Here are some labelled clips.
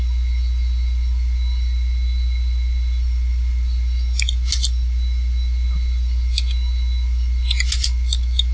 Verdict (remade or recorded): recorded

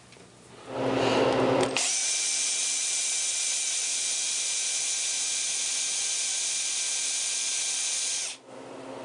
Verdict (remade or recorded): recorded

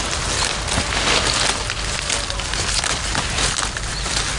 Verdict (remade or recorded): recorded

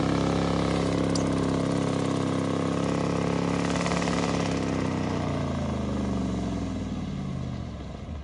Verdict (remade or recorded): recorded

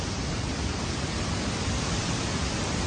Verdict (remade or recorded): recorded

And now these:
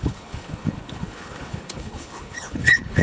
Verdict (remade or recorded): remade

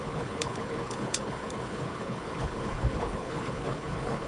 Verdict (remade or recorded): remade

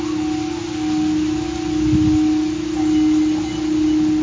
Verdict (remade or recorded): recorded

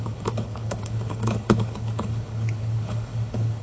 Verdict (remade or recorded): remade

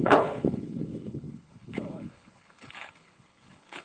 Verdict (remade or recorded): remade